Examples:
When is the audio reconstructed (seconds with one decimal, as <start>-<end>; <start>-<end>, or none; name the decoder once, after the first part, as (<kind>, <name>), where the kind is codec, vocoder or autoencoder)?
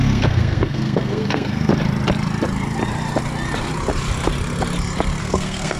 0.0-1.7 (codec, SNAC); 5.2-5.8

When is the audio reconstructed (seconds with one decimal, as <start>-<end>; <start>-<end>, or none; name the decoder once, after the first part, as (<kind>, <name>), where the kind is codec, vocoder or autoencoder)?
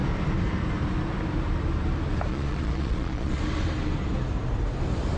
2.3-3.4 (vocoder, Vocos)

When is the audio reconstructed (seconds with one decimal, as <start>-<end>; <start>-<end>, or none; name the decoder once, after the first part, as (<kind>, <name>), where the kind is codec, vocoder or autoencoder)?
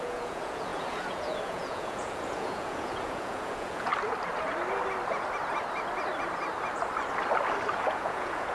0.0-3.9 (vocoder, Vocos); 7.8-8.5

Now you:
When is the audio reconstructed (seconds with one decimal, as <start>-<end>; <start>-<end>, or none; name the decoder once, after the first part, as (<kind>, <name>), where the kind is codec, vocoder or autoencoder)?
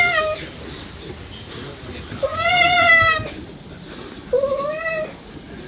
2.3-2.9 (vocoder, Vocos)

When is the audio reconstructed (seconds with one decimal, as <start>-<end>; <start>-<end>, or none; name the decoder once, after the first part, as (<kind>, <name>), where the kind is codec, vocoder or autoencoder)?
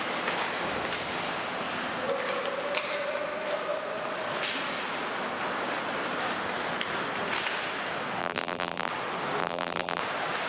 8.2-8.9 (vocoder, BigVGAN v2); 9.4-10.0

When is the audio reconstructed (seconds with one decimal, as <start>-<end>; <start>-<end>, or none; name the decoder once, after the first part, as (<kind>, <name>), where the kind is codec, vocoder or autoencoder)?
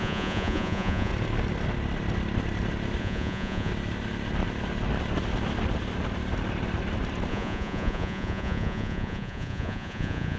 0.0-1.1 (vocoder, Vocos); 3.0-3.7; 7.3-10.4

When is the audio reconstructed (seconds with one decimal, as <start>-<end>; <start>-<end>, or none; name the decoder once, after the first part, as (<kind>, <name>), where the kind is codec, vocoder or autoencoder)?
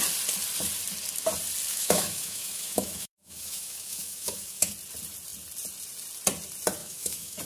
1.7-4.7 (autoencoder, DAC-VAE); 6.8-7.4